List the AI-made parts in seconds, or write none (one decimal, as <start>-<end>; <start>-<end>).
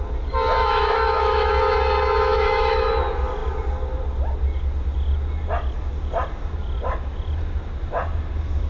0.6-1.5; 2.3-2.9